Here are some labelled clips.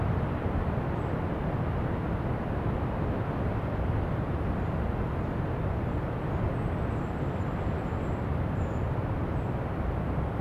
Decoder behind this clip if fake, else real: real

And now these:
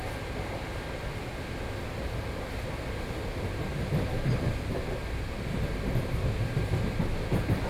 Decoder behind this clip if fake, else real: real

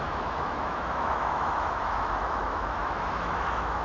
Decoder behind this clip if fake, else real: fake, autoencoder, DAC-VAE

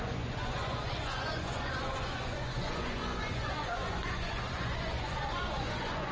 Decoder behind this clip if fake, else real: fake, vocoder, Vocos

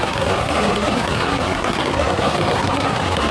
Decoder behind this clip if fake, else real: fake, codec, SNAC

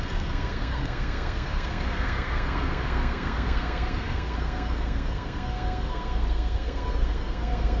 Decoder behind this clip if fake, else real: fake, codec, SNAC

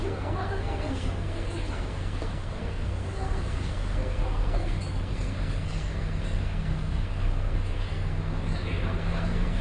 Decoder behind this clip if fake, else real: fake, codec, SNAC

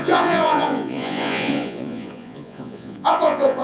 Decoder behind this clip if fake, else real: fake, vocoder, Vocos